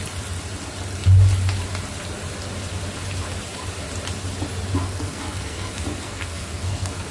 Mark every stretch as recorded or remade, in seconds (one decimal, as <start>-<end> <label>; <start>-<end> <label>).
0.0-4.8 recorded; 4.8-7.1 remade